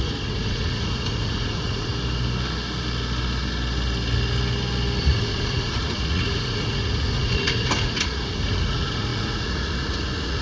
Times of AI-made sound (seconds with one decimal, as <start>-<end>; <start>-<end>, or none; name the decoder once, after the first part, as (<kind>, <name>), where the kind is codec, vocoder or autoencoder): 0.0-1.9 (vocoder, Vocos); 5.0-10.4